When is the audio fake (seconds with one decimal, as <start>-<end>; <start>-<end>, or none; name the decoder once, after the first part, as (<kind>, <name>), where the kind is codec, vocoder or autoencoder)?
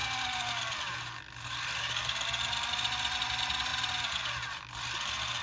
none